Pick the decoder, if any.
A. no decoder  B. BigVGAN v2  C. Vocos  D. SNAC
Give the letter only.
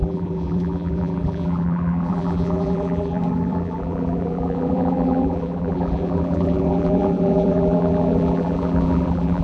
B